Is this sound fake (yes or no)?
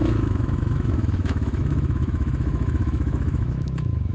yes